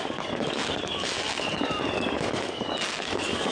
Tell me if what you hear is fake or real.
fake